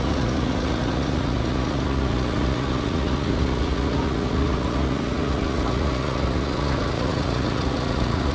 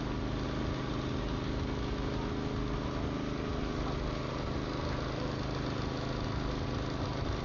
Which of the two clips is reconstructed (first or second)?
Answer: first